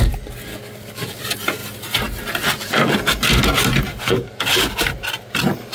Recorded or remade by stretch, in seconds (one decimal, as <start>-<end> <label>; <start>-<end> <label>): 0.0-0.5 recorded; 0.5-1.2 remade; 1.2-3.9 recorded; 3.9-4.7 remade; 4.7-5.7 recorded